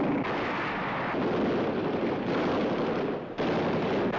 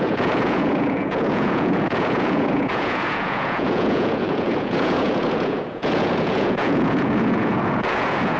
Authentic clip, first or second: first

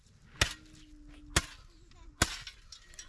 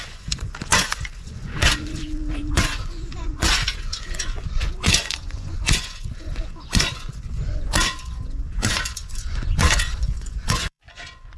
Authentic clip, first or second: first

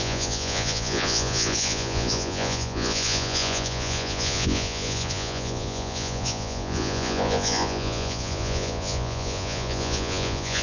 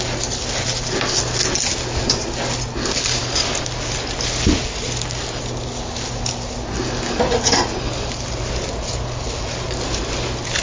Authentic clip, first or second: second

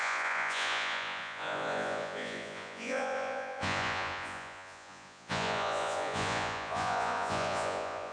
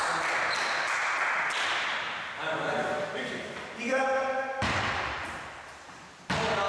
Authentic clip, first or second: second